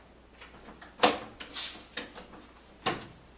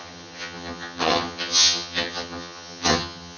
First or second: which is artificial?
second